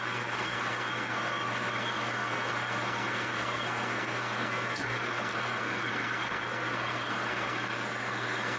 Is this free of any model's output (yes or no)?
no